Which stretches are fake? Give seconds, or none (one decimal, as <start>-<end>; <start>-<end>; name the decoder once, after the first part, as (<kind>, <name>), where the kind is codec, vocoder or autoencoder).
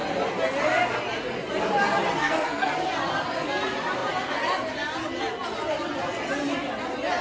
2.2-2.7 (codec, SNAC)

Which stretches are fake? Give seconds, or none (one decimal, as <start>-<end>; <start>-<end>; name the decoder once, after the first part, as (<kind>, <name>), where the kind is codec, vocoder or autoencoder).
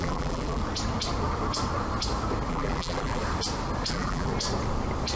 0.0-0.6 (vocoder, BigVGAN v2); 2.5-3.2; 3.9-4.3